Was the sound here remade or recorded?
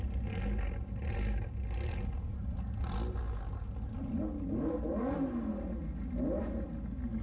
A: recorded